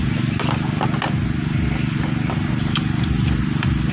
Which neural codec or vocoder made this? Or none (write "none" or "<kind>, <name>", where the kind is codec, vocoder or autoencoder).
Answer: none